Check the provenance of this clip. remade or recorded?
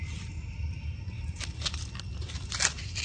recorded